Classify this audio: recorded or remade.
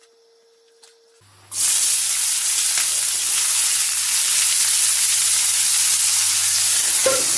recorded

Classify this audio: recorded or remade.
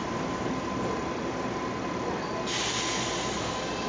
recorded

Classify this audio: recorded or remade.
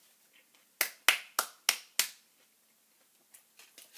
recorded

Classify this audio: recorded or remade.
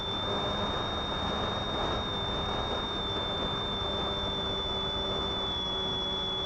recorded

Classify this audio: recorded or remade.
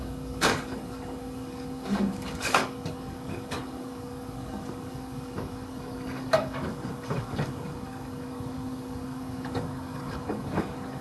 remade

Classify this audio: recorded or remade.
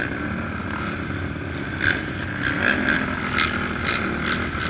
recorded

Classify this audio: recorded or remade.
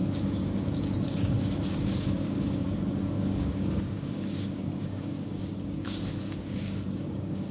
remade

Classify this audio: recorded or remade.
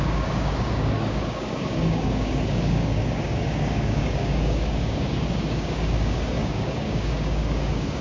remade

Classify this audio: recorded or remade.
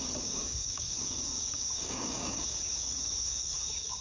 remade